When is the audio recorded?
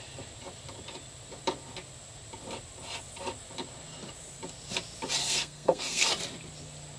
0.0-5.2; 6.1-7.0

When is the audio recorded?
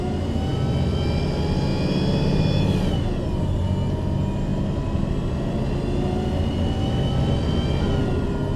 0.0-8.6